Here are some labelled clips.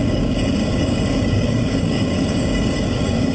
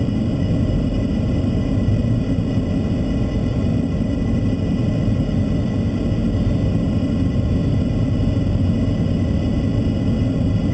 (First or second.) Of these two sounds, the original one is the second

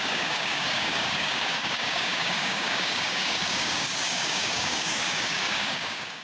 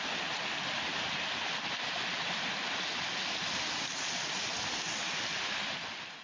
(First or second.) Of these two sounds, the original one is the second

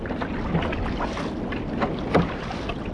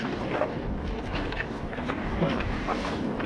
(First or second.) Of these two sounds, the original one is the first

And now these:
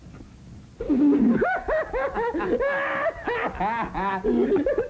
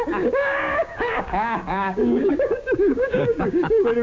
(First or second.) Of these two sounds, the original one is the first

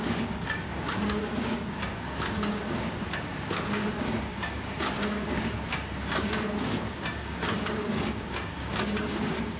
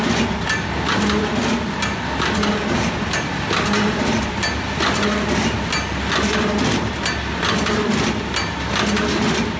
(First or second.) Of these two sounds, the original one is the second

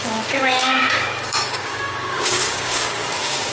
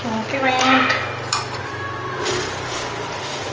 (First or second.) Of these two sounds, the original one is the second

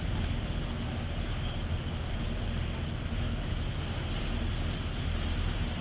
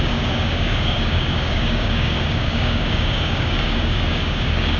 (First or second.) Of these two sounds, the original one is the first